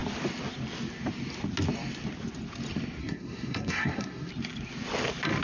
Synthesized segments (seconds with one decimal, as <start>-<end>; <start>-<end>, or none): 3.0-4.3